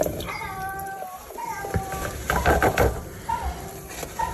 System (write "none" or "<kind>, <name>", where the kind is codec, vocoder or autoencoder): vocoder, BigVGAN v2